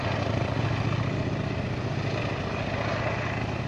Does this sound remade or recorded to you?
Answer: recorded